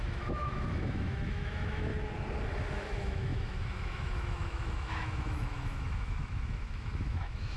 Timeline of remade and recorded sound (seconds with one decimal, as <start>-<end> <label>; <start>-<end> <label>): 0.0-1.9 remade; 1.9-2.7 recorded; 2.7-7.6 remade